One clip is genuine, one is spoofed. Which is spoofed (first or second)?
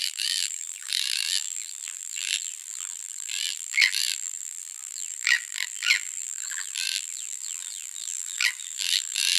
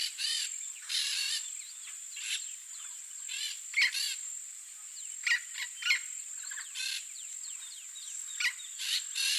first